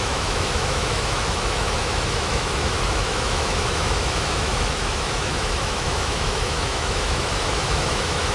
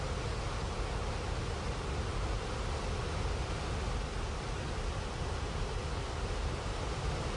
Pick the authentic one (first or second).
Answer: second